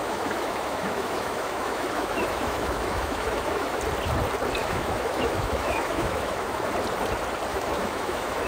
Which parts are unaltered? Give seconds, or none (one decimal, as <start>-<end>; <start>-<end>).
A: 3.8-4.6; 6.7-7.5